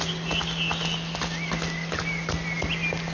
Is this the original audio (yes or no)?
yes